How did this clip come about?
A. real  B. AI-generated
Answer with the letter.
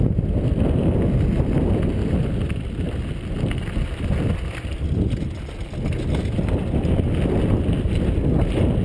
A